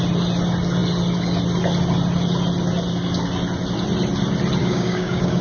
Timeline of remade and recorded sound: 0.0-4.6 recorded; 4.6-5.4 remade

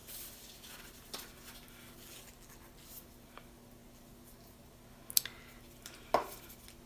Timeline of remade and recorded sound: 0.0-6.9 recorded